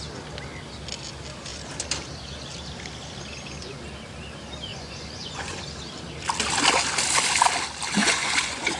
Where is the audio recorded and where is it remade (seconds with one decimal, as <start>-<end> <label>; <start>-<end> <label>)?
0.0-4.7 recorded; 4.7-5.6 remade; 5.6-8.0 recorded; 8.0-8.8 remade